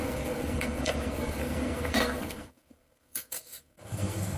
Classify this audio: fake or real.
fake